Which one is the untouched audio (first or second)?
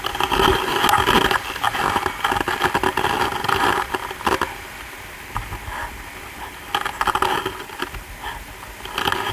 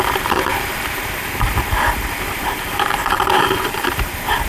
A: first